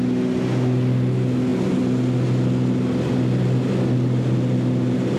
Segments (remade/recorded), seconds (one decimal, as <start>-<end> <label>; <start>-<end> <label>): 0.0-5.2 recorded